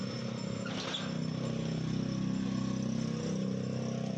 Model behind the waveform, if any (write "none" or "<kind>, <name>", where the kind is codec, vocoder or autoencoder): none